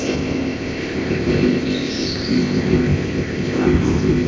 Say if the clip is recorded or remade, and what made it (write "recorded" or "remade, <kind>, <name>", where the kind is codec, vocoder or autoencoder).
remade, codec, ZipCodec